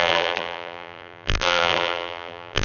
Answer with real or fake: fake